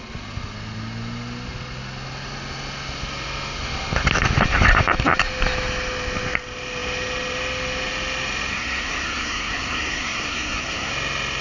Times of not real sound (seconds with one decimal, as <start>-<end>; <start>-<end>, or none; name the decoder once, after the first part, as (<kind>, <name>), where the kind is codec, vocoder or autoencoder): 8.5-10.9 (codec, SNAC)